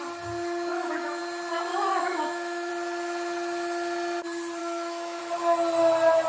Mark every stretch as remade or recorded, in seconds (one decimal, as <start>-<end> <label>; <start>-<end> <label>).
0.0-0.7 recorded; 0.7-1.2 remade; 1.2-1.7 recorded; 1.7-2.7 remade; 2.7-4.6 recorded; 4.6-5.2 remade; 5.2-6.3 recorded